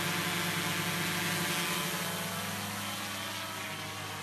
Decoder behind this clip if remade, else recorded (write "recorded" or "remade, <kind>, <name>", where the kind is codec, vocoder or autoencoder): recorded